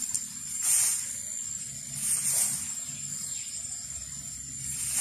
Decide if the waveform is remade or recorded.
recorded